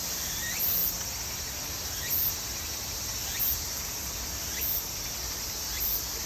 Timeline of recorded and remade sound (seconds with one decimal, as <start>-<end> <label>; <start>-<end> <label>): 0.0-6.2 recorded